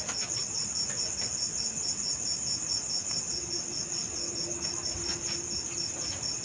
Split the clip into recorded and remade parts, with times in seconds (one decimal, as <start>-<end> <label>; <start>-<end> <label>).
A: 0.0-6.4 recorded